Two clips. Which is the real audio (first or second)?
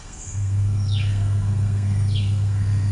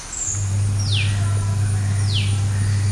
second